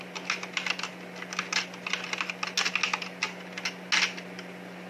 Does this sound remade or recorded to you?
recorded